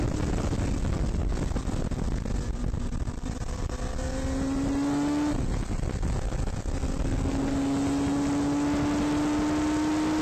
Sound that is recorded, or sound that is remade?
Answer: recorded